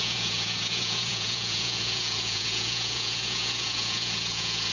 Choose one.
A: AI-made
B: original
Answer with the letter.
A